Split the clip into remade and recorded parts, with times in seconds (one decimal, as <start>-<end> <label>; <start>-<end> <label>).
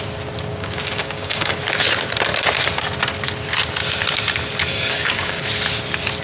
0.0-0.5 recorded; 0.5-1.6 remade; 1.6-4.7 recorded; 4.7-5.4 remade; 5.4-6.2 recorded